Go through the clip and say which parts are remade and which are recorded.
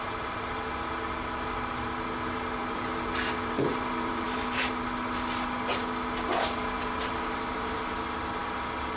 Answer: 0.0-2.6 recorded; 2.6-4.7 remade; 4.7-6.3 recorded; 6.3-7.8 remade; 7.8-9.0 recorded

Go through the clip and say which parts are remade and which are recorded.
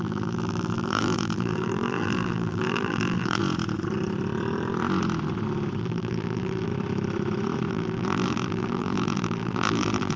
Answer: 0.0-3.4 remade; 3.4-5.8 recorded; 5.8-6.7 remade; 6.7-7.7 recorded; 7.7-10.2 remade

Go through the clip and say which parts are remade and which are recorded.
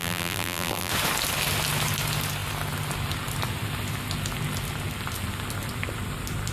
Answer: 0.0-0.9 remade; 0.9-6.5 recorded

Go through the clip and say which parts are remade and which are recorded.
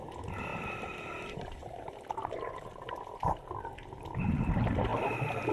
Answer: 0.0-0.5 recorded; 0.5-1.9 remade; 1.9-5.5 recorded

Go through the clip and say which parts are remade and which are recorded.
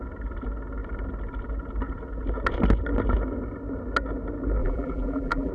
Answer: 0.0-4.6 recorded; 4.6-5.5 remade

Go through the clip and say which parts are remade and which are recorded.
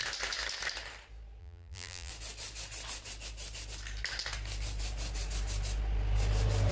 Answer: 0.0-1.4 recorded; 1.4-2.1 remade; 2.1-6.7 recorded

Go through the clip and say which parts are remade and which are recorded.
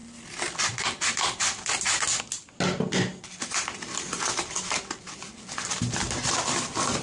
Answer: 0.0-2.2 remade; 2.2-3.1 recorded; 3.1-6.6 remade; 6.6-7.0 recorded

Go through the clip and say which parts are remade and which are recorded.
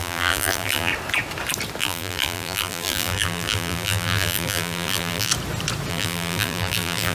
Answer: 0.0-0.9 remade; 0.9-1.8 recorded; 1.8-5.3 remade; 5.3-5.9 recorded; 5.9-7.1 remade